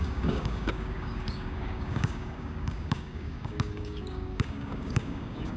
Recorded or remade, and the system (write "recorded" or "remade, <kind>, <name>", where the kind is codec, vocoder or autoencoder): remade, codec, DAC